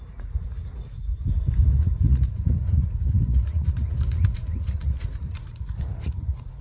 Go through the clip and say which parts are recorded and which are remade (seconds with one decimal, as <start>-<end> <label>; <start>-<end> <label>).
0.0-1.1 remade; 1.1-1.7 recorded; 1.7-6.6 remade

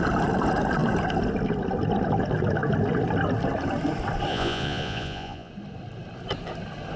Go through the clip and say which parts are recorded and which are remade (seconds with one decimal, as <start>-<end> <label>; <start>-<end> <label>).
0.0-4.3 recorded; 4.3-5.5 remade; 5.5-7.0 recorded

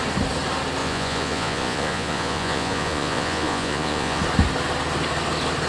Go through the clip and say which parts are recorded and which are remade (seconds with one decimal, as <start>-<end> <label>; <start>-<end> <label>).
0.0-0.8 recorded; 0.8-4.2 remade; 4.2-5.7 recorded